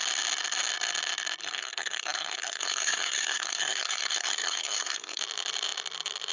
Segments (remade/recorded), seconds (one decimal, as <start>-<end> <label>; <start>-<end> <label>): 0.0-1.4 recorded; 1.4-5.2 remade; 5.2-6.3 recorded